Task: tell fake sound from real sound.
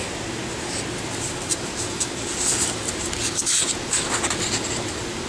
real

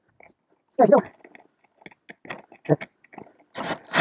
real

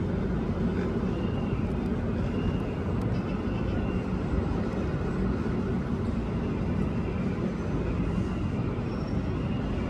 real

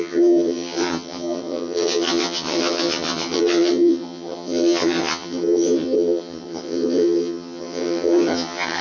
fake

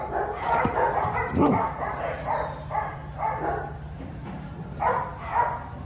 fake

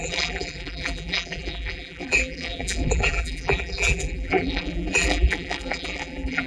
fake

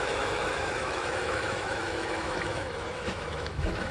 fake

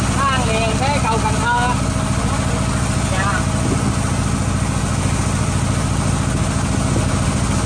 real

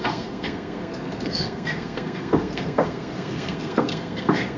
fake